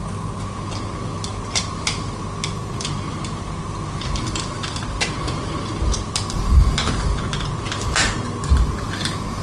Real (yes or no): yes